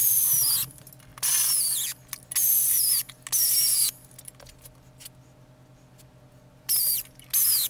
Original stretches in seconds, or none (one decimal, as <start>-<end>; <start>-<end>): 0.0-7.7